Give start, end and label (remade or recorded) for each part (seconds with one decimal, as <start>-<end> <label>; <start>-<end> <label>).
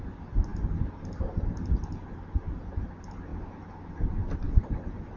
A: 0.0-5.2 recorded